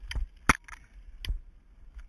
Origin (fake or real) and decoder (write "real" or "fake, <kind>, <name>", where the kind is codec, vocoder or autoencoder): real